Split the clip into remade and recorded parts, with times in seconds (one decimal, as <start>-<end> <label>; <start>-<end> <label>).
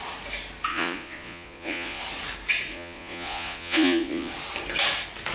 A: 0.0-0.7 recorded; 0.7-2.0 remade; 2.0-2.7 recorded; 2.7-4.3 remade; 4.3-5.3 recorded